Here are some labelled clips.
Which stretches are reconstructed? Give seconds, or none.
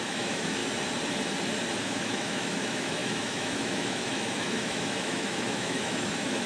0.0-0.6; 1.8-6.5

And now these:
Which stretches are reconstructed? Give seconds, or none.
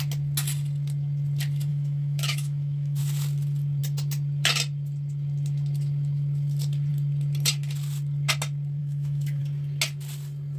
1.7-3.0; 8.8-9.4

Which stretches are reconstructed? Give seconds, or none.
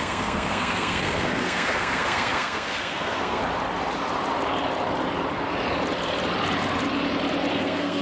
0.0-3.4; 7.5-8.0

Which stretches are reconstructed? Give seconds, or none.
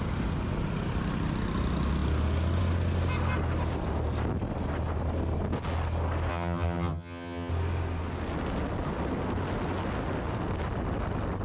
6.3-7.5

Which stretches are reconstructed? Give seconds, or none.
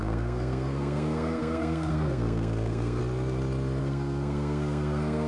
0.0-3.0; 3.8-5.3